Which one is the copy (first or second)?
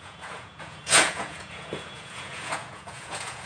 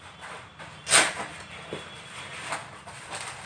first